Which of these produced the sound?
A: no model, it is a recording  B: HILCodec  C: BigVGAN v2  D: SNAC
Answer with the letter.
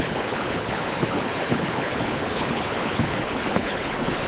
B